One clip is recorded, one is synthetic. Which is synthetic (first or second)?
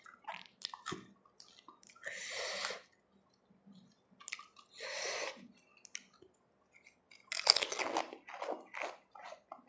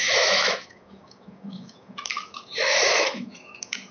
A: second